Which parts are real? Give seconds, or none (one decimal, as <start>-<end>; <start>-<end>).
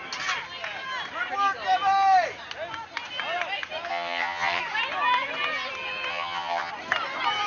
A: 0.0-3.9; 4.6-6.1; 6.7-7.5